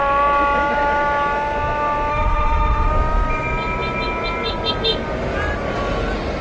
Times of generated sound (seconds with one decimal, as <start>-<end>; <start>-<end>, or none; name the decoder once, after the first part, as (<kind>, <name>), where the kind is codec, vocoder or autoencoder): 2.1-2.9 (autoencoder, DAC-VAE)